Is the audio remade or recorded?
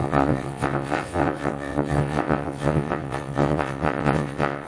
remade